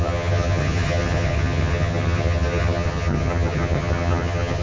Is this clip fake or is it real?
fake